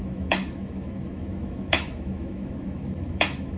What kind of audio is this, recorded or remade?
remade